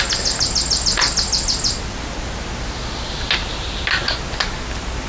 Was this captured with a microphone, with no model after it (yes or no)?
yes